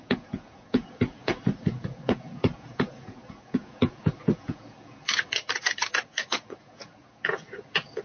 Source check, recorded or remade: remade